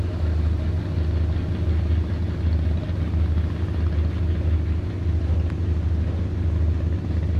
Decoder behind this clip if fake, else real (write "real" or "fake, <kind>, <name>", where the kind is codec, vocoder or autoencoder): real